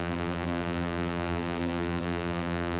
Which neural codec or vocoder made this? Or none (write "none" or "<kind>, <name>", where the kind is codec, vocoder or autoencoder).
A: vocoder, BigVGAN v2